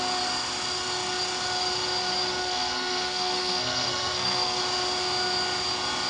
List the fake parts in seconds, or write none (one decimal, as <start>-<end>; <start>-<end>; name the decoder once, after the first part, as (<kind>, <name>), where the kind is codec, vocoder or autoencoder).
2.4-4.6 (codec, SNAC)